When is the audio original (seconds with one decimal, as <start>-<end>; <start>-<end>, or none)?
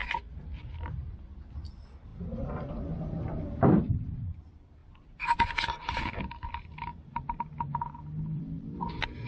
0.0-0.7; 2.1-2.7; 6.9-8.2